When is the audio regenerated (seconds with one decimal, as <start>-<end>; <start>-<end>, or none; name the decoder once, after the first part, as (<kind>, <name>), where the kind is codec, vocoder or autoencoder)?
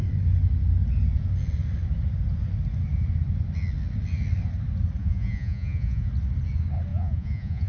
5.0-6.1 (vocoder, Vocos); 6.9-7.7